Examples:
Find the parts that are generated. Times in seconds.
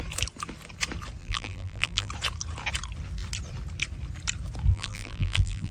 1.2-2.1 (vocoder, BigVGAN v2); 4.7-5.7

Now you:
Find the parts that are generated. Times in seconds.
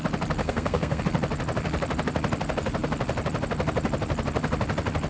0.4-1.0 (codec, SNAC)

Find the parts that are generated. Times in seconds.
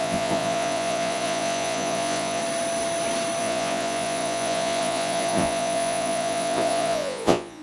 0.0-2.4 (vocoder, Vocos); 3.4-7.6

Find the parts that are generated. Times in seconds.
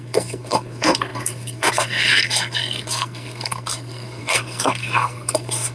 0.0-5.7 (codec, SNAC)